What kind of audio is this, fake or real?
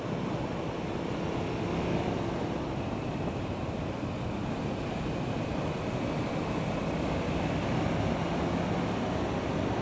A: real